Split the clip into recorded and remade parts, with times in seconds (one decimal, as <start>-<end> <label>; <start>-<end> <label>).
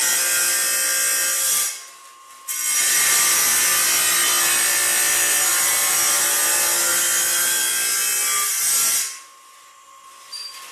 0.0-10.7 recorded